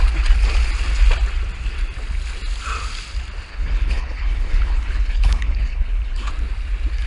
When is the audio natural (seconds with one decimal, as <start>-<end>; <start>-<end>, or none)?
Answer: 0.0-3.5; 6.3-7.1